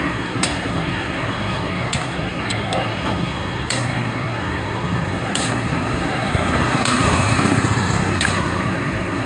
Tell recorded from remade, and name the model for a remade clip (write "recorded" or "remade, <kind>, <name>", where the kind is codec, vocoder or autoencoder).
remade, codec, SNAC